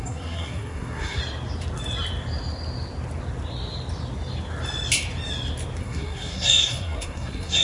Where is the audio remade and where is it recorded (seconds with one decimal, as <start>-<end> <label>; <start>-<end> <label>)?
0.0-1.2 remade; 1.2-5.8 recorded; 5.8-7.6 remade